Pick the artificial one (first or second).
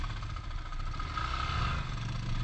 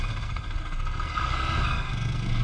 second